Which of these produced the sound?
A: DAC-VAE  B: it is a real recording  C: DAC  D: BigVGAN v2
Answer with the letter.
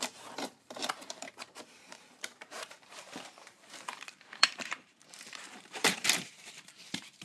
D